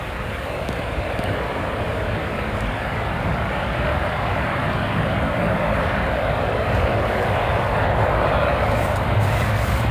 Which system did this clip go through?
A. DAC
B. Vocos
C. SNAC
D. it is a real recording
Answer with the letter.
A